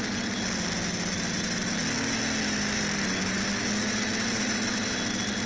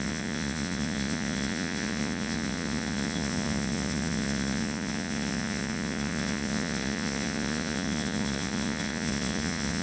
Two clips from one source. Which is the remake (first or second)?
second